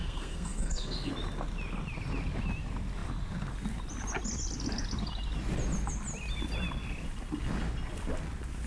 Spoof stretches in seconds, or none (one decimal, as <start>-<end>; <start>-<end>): 0.0-1.1